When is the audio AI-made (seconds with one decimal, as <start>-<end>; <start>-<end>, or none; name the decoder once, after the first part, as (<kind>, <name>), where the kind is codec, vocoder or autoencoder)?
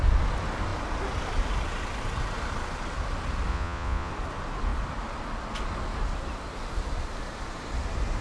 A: 3.5-4.1 (vocoder, Vocos)